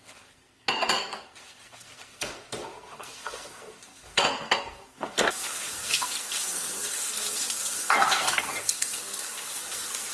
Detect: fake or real fake